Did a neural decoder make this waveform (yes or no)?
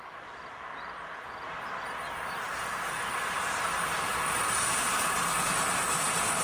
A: no